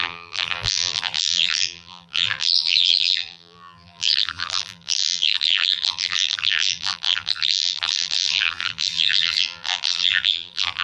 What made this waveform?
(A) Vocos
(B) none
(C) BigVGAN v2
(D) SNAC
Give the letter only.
C